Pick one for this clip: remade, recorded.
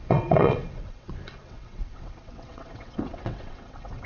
remade